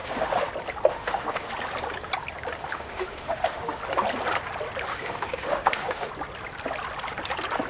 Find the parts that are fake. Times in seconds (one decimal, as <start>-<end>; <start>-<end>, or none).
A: 0.0-0.5; 0.9-1.5; 2.6-3.8; 4.9-6.1